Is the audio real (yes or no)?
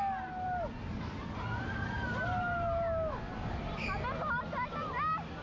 yes